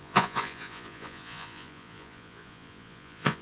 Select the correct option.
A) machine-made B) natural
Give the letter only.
A